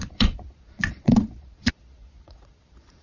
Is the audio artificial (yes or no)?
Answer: yes